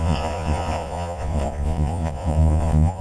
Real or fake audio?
fake